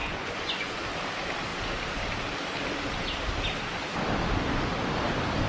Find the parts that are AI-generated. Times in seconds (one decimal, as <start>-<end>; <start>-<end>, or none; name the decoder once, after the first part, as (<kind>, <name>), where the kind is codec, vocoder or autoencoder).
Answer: 0.0-0.8 (vocoder, Vocos)